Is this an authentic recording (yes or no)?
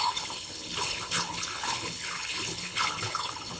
no